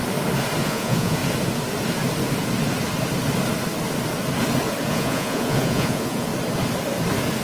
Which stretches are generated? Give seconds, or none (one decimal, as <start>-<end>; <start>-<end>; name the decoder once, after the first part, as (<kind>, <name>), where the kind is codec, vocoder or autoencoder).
0.6-1.2 (vocoder, Vocos); 4.9-6.3